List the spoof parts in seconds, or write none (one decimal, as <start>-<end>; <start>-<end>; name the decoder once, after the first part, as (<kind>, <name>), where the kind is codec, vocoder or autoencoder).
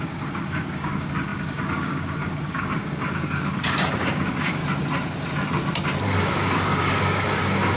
0.0-4.6 (codec, DAC); 6.2-7.8